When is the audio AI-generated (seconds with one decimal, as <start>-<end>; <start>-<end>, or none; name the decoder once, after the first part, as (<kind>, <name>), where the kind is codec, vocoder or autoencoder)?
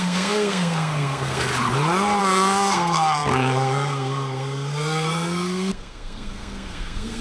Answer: 0.0-1.5 (codec, SNAC); 2.2-7.2